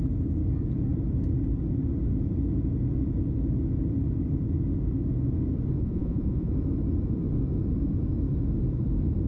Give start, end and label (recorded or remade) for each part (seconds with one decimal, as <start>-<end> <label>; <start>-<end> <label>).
0.0-5.8 recorded; 5.8-6.5 remade; 6.5-9.3 recorded